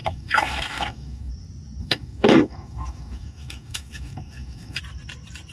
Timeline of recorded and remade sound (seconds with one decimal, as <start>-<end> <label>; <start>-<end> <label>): 0.0-1.3 remade; 1.3-1.8 recorded; 1.8-4.8 remade; 4.8-5.5 recorded